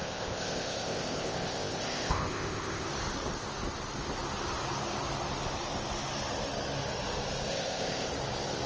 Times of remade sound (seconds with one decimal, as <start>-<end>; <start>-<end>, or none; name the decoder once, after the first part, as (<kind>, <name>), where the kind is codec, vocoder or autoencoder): 0.0-2.9 (codec, ZipCodec); 7.5-8.1